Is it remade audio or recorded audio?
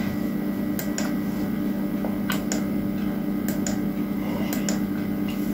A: recorded